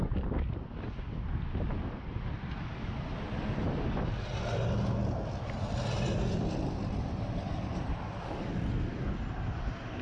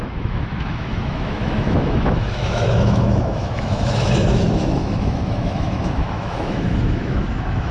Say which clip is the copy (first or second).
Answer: second